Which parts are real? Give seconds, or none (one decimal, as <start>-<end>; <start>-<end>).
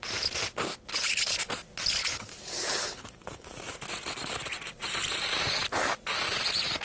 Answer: 0.0-0.7; 1.5-2.0; 3.6-6.8